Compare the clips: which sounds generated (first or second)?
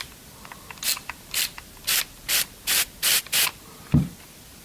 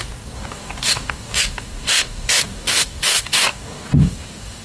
second